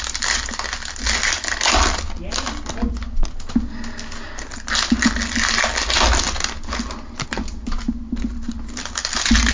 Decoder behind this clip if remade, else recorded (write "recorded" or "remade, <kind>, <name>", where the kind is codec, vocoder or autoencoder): recorded